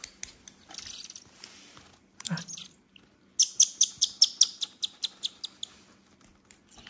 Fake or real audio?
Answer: real